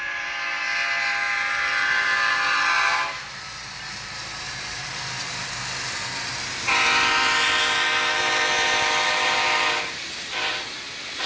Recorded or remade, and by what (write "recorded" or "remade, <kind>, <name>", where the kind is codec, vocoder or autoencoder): recorded